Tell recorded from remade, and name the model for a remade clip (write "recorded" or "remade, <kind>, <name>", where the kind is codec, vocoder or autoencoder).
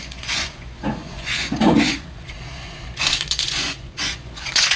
remade, vocoder, Vocos